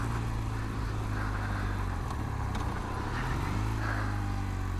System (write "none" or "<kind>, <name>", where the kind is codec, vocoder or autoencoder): none